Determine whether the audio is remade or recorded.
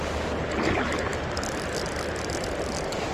recorded